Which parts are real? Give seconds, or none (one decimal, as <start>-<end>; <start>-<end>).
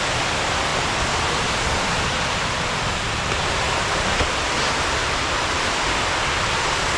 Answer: 0.0-0.7; 4.4-5.0; 6.0-7.0